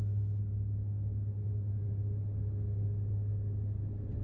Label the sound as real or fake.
real